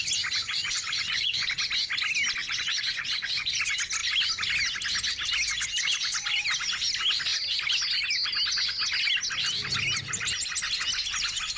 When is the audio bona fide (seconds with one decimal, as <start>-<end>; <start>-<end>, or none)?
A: 0.0-0.4; 1.5-2.4; 3.6-11.6